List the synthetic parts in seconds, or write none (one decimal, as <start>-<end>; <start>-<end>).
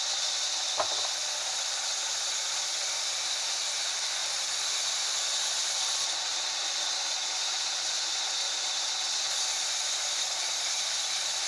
0.0-1.2; 3.1-6.3; 10.2-11.5